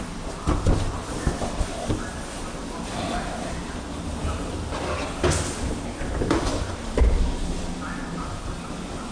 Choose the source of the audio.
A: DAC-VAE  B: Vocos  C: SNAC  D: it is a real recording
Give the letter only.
D